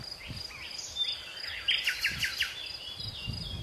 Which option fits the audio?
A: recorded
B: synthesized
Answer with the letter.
A